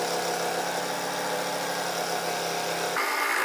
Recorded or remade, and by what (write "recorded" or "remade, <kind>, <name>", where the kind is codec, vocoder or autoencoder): recorded